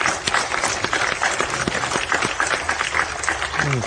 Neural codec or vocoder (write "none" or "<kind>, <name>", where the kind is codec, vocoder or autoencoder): none